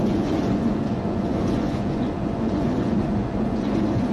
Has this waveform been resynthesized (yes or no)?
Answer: yes